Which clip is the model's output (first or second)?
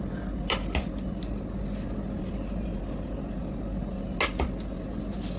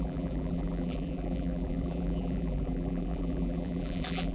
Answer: second